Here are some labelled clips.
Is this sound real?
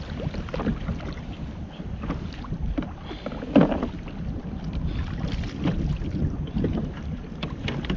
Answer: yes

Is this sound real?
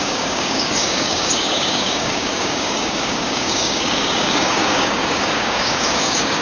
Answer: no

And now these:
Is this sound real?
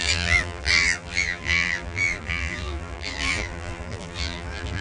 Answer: no